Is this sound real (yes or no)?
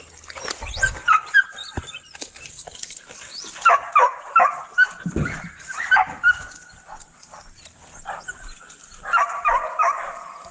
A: yes